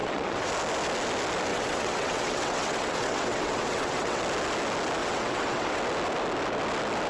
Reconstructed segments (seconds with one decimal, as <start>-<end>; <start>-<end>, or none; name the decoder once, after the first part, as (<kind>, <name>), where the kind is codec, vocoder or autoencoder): 0.0-0.5 (vocoder, WaveNeXt); 1.5-4.2; 5.0-5.8